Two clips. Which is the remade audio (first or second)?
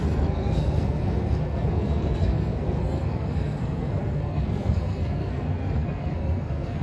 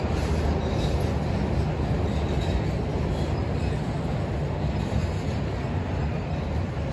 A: first